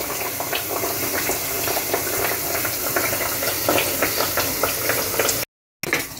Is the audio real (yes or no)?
yes